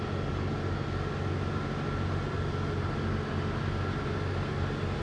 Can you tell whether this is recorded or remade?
recorded